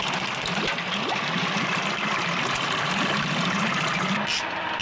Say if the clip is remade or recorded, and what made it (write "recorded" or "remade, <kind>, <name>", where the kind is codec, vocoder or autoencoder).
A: recorded